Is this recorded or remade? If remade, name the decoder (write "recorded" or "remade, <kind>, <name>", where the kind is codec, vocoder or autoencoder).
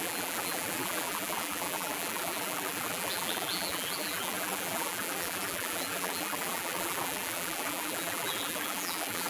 remade, vocoder, BigVGAN v2